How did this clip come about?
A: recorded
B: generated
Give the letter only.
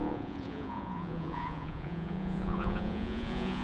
B